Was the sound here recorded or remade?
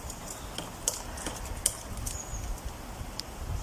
recorded